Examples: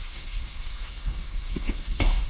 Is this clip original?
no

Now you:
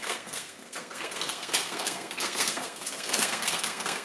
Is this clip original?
no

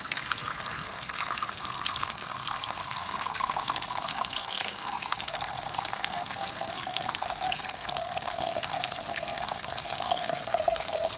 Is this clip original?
no